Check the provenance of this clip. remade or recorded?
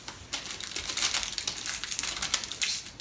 recorded